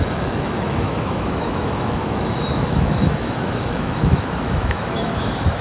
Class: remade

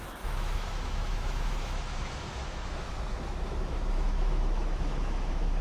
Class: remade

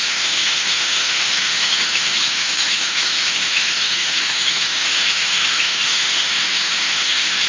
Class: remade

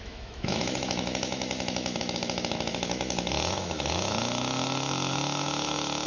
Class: remade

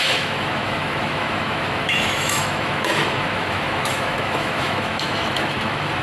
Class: remade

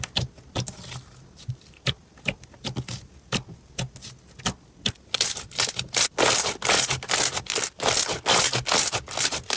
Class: recorded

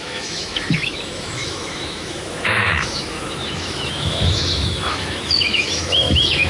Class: remade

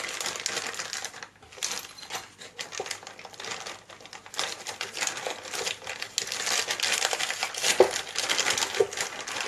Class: recorded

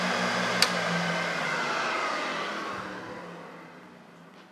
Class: recorded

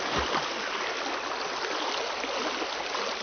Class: recorded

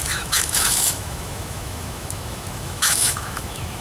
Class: remade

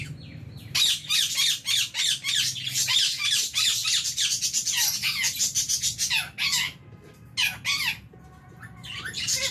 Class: recorded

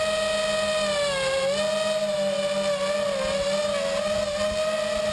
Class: recorded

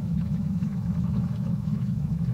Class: remade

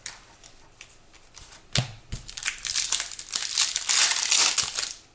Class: recorded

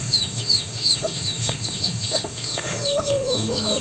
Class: remade